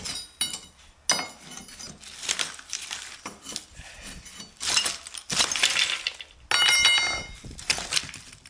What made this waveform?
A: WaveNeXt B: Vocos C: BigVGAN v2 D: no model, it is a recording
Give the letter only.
D